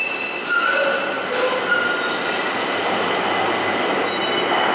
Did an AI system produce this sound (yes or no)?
no